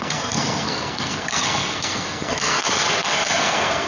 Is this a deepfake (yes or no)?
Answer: yes